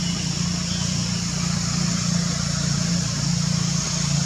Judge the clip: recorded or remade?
recorded